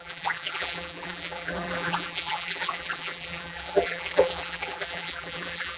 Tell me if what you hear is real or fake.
fake